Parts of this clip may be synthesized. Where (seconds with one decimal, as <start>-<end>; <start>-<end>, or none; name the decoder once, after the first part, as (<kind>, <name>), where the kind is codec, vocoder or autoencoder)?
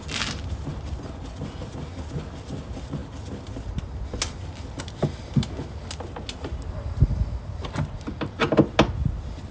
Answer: none